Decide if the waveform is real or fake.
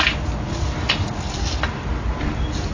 real